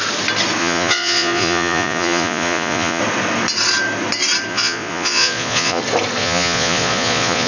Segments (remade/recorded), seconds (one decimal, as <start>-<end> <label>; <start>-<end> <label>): 0.0-0.6 recorded; 0.6-3.0 remade; 3.0-4.5 recorded; 4.5-5.8 remade; 5.8-6.2 recorded; 6.2-7.5 remade